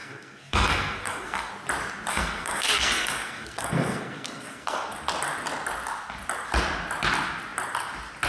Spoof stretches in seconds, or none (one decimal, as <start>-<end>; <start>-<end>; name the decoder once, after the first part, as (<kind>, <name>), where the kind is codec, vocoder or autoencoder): 0.0-1.5 (codec, SNAC); 2.1-4.9